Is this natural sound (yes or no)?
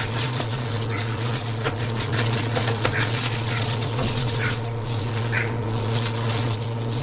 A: no